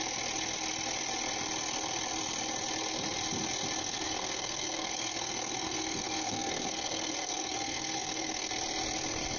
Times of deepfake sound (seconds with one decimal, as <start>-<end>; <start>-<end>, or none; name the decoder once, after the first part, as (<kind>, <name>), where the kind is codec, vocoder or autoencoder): 3.8-8.5 (codec, SNAC)